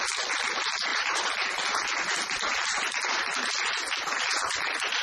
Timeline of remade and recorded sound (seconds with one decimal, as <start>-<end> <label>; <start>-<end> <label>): 0.0-0.9 recorded; 0.9-1.5 remade; 1.5-5.0 recorded